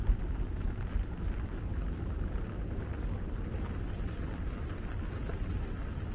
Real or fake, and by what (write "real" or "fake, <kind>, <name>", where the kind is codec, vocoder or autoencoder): real